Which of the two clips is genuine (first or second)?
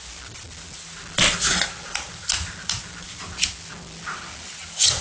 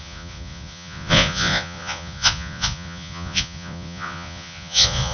first